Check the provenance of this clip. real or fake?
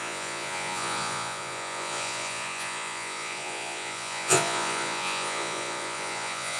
fake